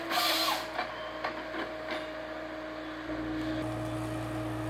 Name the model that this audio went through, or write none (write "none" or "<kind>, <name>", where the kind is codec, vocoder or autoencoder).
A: none